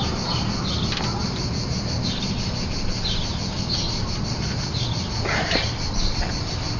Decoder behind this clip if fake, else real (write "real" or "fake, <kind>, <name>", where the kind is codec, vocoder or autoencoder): real